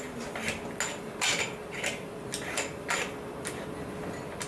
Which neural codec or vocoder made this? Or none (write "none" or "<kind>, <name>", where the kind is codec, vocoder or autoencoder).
none